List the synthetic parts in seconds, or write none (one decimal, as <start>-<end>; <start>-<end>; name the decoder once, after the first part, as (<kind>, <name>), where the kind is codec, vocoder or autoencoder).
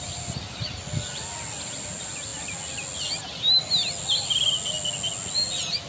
none